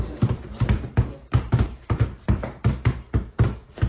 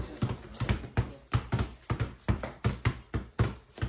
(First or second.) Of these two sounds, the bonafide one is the second